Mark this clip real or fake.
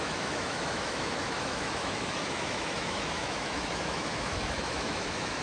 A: fake